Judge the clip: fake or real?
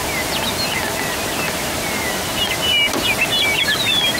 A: real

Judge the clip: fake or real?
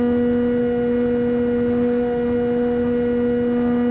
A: real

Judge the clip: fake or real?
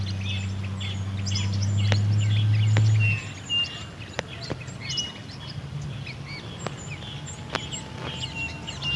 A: real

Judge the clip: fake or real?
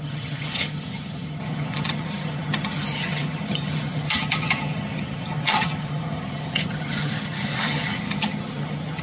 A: fake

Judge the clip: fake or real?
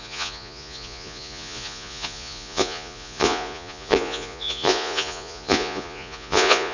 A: fake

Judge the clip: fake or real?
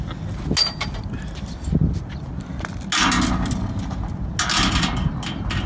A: real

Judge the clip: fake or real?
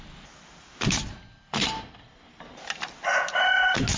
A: real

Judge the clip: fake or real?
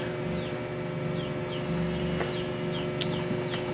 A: real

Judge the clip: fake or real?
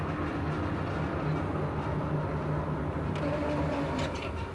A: real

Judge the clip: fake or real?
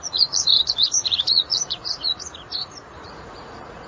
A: fake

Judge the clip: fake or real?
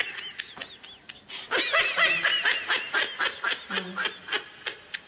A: real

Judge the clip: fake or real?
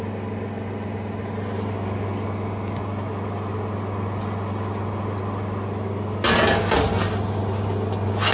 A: real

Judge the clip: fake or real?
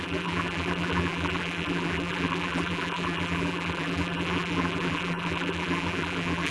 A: fake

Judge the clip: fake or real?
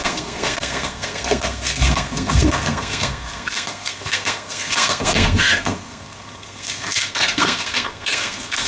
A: fake